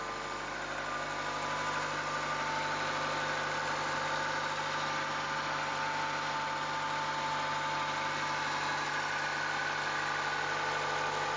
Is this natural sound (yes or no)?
yes